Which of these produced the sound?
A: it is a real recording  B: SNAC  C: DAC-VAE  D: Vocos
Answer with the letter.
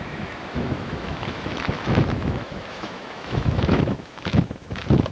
C